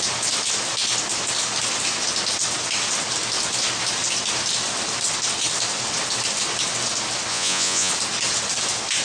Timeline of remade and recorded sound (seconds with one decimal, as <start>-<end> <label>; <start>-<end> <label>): 0.0-7.3 recorded; 7.3-7.9 remade; 7.9-9.0 recorded